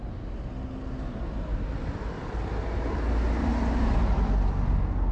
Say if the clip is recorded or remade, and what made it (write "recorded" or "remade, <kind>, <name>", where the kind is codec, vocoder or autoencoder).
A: recorded